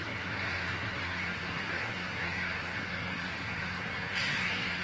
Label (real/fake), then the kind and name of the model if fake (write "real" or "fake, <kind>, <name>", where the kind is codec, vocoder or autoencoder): fake, codec, SNAC